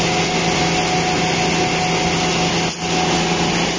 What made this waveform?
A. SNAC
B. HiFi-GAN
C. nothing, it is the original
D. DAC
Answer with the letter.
C